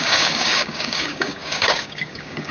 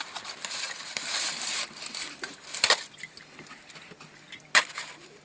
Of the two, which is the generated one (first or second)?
first